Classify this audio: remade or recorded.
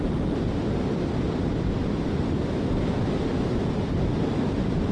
recorded